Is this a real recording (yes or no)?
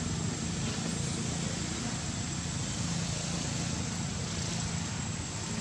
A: yes